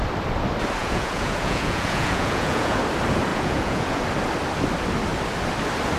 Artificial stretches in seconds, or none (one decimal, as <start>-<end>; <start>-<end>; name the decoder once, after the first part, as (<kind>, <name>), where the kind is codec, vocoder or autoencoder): 0.8-2.8 (vocoder, Vocos); 3.3-4.0